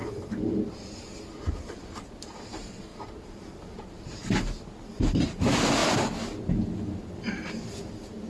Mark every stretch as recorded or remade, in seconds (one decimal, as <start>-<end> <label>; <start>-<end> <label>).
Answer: 0.0-2.9 recorded; 2.9-4.6 remade; 4.6-8.3 recorded